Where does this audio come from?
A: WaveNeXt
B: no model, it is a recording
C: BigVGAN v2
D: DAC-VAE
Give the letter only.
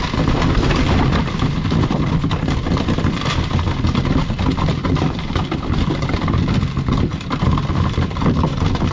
C